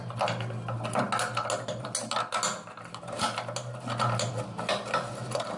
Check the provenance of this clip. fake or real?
real